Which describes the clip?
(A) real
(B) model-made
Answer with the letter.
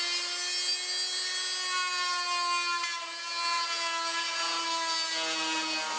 A